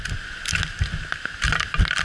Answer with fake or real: real